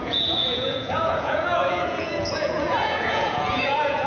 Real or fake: fake